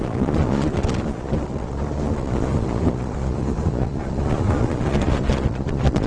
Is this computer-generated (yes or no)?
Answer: yes